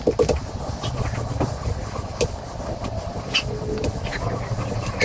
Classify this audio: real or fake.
real